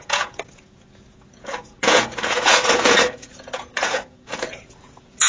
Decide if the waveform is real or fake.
fake